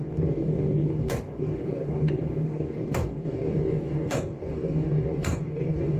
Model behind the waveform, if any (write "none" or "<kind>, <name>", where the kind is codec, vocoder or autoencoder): codec, DAC